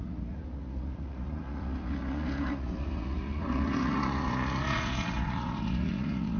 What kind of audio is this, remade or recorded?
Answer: remade